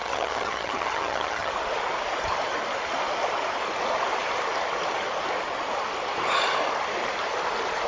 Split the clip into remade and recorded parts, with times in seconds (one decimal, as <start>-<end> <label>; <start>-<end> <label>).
0.0-1.5 remade; 1.5-7.9 recorded